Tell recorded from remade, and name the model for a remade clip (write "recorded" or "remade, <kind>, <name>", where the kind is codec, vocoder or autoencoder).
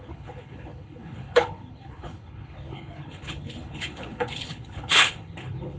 remade, codec, HILCodec